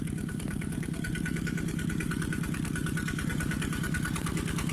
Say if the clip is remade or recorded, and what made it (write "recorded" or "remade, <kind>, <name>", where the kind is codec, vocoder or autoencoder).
remade, codec, DAC